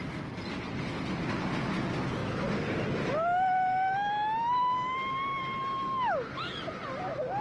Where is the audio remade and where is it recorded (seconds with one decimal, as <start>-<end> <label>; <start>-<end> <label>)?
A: 0.0-7.4 recorded

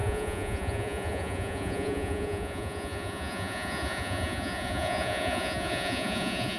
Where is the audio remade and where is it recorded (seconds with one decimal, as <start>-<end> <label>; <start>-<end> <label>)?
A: 0.0-6.6 remade